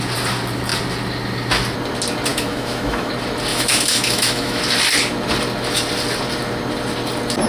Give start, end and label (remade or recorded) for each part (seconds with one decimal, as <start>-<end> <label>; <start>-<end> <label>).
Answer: 0.0-2.3 recorded; 2.3-3.1 remade; 3.1-3.5 recorded; 3.5-4.6 remade; 4.6-7.5 recorded